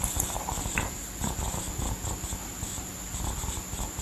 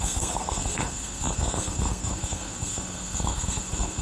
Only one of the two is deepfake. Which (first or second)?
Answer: second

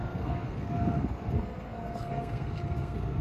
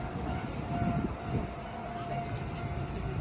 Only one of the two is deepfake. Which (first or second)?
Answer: first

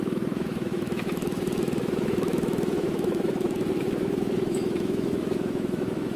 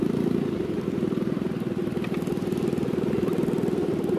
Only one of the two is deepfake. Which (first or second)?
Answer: first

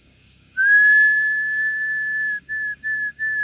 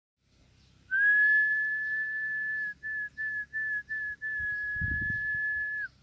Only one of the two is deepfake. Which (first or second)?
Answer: first